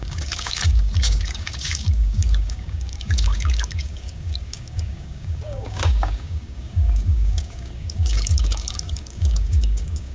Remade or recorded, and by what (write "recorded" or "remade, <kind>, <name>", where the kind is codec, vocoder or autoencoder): remade, codec, DAC